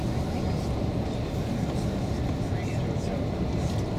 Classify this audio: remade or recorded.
recorded